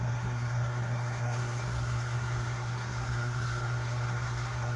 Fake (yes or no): yes